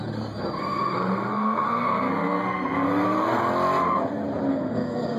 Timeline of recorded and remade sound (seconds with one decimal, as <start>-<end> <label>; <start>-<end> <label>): 0.0-0.6 recorded; 0.6-3.4 remade; 3.4-4.5 recorded; 4.5-5.2 remade